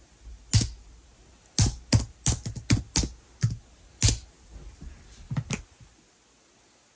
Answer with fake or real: real